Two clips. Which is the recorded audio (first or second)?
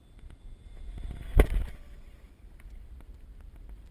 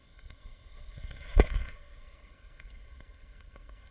first